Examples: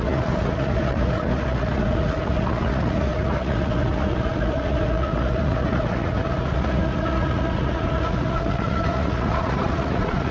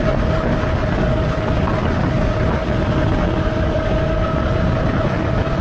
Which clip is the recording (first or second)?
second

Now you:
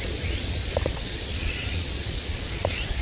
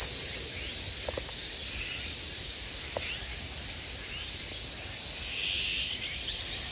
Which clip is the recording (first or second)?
second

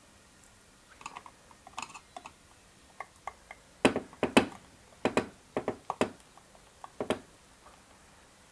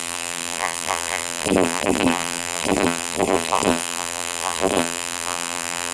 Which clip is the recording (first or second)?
first